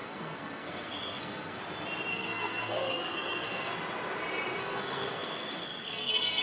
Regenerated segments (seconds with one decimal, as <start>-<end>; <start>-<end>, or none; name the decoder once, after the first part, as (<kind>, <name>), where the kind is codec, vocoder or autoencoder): 0.0-1.6 (codec, SNAC); 2.1-3.7; 4.6-6.4